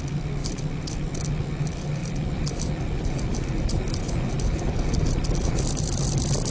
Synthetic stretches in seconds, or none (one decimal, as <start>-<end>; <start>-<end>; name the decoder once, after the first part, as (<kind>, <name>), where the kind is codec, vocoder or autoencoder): 0.4-1.2 (vocoder, BigVGAN v2); 2.0-3.2